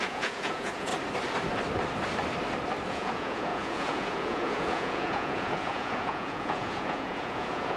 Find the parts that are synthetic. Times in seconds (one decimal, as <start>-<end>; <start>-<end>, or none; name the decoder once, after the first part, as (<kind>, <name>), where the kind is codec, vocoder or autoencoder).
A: 0.0-0.9 (vocoder, Vocos); 2.9-7.8